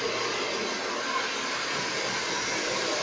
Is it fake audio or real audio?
real